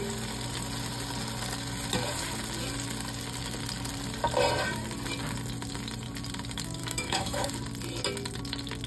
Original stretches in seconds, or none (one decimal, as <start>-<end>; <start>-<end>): 0.0-6.8; 7.5-8.9